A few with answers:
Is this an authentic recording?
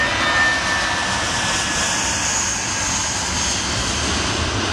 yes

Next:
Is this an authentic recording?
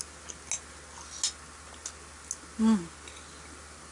yes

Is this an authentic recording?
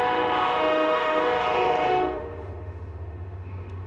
no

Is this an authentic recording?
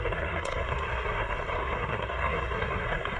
no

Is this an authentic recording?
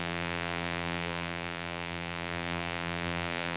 no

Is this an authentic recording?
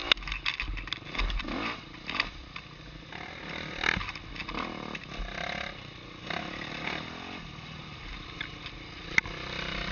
yes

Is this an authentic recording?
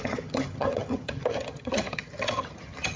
no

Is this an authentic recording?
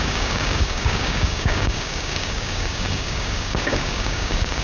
no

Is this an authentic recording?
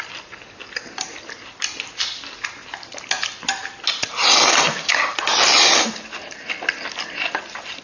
yes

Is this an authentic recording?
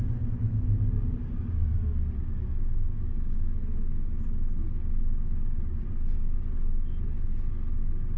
yes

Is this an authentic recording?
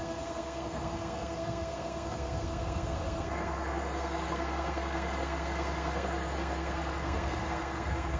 no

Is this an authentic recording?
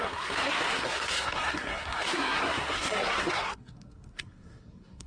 no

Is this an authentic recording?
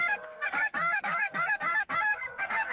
no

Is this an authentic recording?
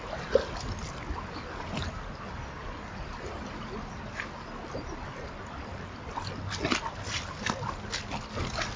yes